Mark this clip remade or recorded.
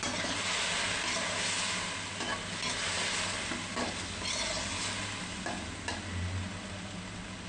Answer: recorded